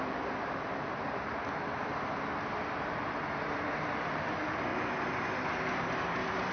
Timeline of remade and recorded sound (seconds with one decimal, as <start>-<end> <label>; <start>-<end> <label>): 0.0-6.5 recorded